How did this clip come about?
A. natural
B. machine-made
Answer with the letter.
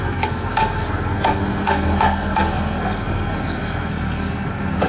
B